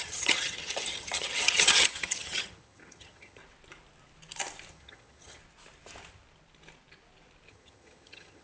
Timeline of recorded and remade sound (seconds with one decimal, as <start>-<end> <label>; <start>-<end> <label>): 0.0-3.4 remade; 3.4-4.7 recorded; 4.7-5.4 remade; 5.4-7.5 recorded; 7.5-8.4 remade